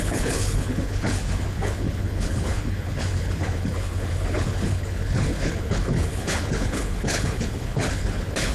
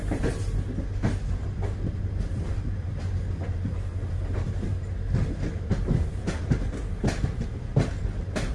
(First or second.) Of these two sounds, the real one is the second